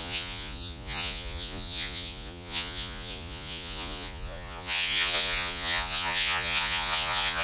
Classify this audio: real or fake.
fake